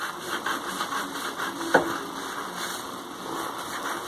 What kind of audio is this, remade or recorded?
recorded